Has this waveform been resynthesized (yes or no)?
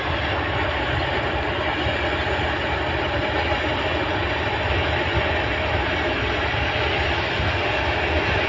no